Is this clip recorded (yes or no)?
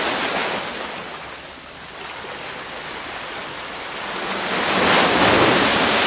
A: yes